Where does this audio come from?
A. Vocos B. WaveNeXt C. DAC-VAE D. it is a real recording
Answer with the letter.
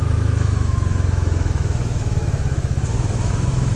C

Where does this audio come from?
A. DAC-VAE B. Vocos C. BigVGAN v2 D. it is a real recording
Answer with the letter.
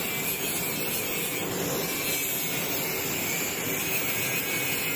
D